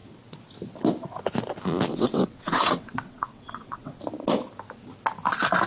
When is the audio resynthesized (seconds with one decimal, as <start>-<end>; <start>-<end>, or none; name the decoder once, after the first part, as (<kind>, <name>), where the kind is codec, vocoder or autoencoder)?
1.9-4.0 (vocoder, WaveNeXt)